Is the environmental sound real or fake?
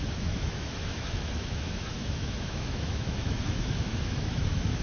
fake